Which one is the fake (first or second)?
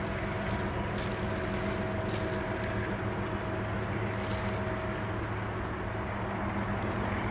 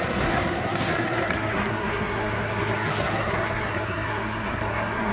second